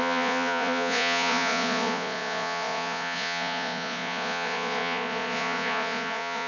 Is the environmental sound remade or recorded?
remade